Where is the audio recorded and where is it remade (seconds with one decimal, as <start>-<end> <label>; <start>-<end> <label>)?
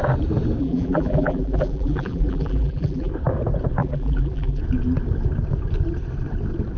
0.0-0.6 recorded; 0.6-3.1 remade; 3.1-3.8 recorded; 3.8-4.6 remade; 4.6-6.8 recorded